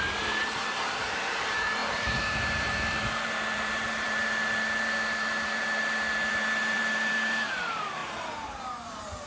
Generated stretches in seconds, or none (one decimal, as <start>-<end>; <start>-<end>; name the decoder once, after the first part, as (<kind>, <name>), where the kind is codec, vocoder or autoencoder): 0.0-0.4 (vocoder, BigVGAN v2); 1.0-9.3